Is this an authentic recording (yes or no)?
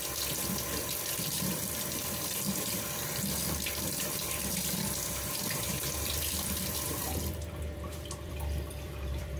no